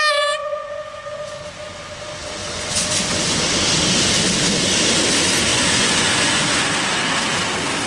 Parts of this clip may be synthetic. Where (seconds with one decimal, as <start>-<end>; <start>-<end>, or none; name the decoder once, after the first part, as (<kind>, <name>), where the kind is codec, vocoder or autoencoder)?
0.4-1.4 (vocoder, Vocos); 2.4-3.4; 5.5-6.7